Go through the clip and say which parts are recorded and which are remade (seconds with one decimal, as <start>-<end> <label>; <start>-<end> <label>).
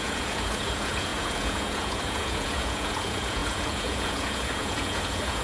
0.0-5.4 remade